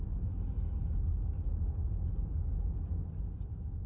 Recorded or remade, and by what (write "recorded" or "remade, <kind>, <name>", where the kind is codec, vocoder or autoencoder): recorded